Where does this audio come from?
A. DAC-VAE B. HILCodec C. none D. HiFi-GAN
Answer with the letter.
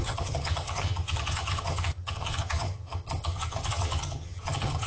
D